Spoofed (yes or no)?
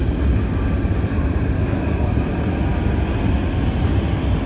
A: no